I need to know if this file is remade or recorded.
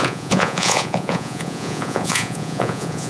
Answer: remade